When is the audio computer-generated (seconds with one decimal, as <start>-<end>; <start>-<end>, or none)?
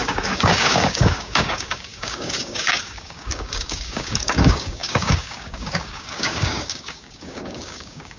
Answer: 0.0-8.2